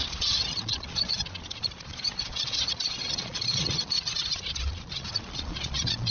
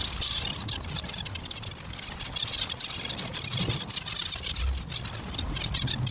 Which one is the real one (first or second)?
second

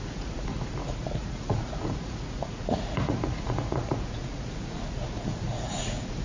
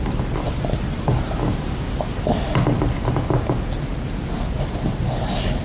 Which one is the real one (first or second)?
second